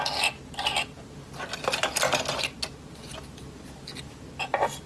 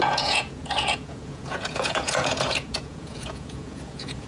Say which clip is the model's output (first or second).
second